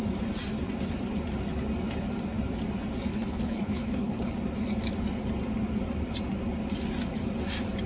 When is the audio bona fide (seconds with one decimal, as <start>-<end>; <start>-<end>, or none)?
0.0-3.1; 4.3-7.9